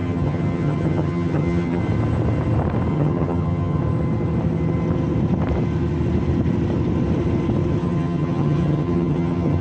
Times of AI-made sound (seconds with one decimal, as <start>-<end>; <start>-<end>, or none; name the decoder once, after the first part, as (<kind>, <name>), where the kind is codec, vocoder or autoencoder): 0.0-1.8 (vocoder, HiFi-GAN); 2.9-3.8; 7.8-9.6